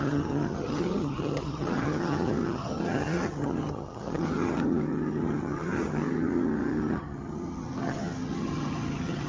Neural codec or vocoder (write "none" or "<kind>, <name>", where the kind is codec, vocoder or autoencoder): vocoder, HiFi-GAN